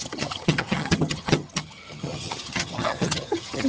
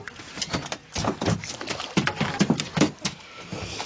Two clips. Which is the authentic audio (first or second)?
second